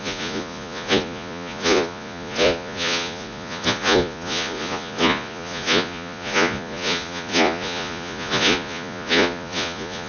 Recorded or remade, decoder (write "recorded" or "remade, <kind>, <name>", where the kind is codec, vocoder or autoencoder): remade, vocoder, Vocos